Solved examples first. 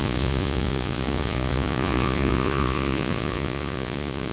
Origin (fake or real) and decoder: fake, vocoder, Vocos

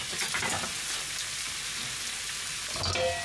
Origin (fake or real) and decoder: real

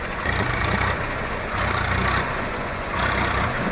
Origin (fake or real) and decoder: fake, vocoder, Vocos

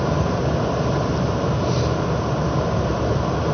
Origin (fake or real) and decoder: real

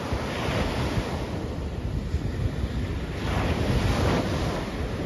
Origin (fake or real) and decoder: real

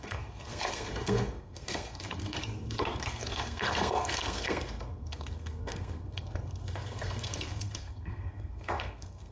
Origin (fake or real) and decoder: fake, codec, SNAC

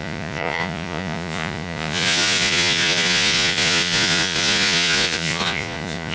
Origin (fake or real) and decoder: fake, vocoder, Vocos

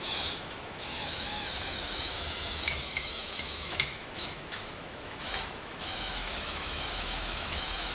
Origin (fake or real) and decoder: fake, autoencoder, DAC-VAE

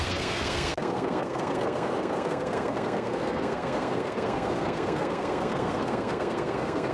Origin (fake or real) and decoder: fake, codec, SNAC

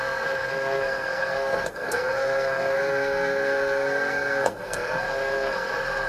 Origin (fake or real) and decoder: fake, codec, SNAC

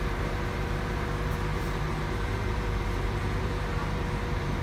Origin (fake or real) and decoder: fake, vocoder, BigVGAN v2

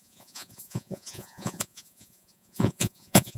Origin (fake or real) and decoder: fake, vocoder, Vocos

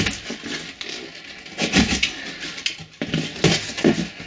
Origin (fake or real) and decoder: real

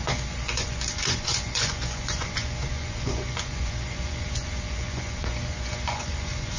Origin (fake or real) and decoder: fake, vocoder, Vocos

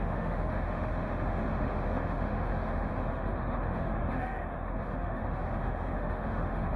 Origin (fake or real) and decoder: fake, autoencoder, DAC-VAE